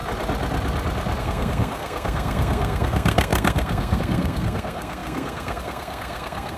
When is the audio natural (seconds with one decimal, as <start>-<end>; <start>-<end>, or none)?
0.0-1.2